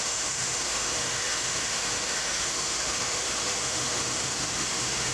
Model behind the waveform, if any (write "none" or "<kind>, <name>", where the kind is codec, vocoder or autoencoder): autoencoder, DAC-VAE